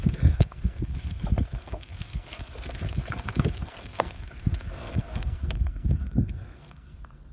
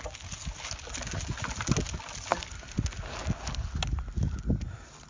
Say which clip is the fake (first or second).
first